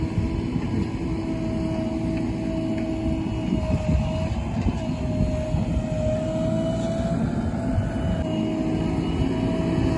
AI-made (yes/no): no